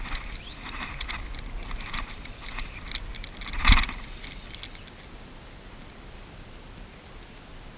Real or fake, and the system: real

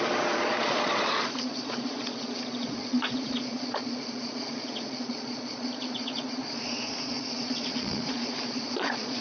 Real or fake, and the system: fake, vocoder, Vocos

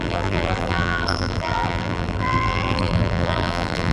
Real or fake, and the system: fake, vocoder, BigVGAN v2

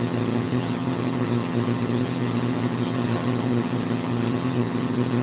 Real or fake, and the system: fake, vocoder, HiFi-GAN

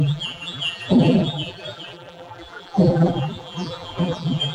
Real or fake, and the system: fake, vocoder, BigVGAN v2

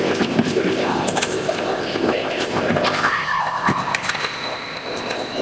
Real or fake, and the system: fake, codec, ZipCodec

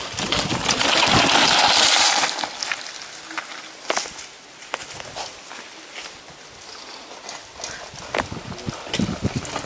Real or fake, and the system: real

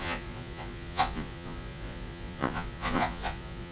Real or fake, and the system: fake, vocoder, Vocos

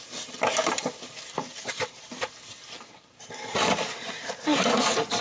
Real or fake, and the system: fake, vocoder, BigVGAN v2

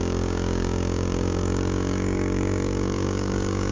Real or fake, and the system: fake, codec, DAC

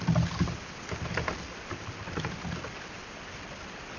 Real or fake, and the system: real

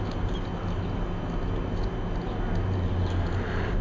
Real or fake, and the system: real